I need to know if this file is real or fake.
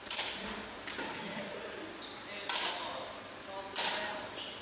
real